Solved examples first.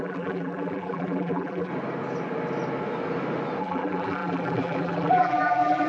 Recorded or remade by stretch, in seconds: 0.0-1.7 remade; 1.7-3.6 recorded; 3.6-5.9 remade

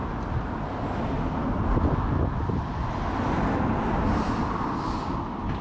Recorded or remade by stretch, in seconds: 0.0-5.6 recorded